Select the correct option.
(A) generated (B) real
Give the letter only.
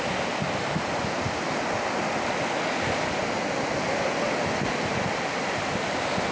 B